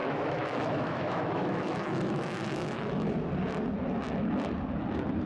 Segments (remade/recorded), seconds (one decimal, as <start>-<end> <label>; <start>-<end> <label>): 0.0-3.1 remade; 3.1-5.3 recorded